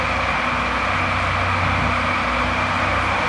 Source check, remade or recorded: recorded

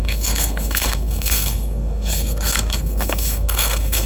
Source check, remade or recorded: remade